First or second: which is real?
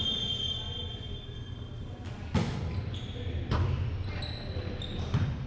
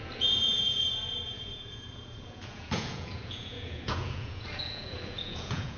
first